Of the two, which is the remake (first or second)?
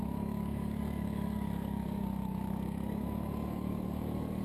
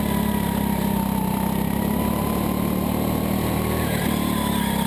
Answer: first